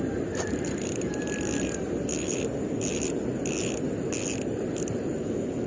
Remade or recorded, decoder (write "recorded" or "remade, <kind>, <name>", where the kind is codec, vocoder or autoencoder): recorded